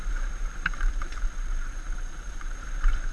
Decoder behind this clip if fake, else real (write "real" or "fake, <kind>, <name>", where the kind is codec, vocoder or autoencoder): fake, vocoder, BigVGAN v2